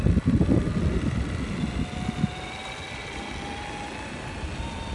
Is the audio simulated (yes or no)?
no